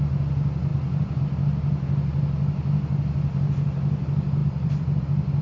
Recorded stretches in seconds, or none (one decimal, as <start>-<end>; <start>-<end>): 0.0-4.4; 5.0-5.4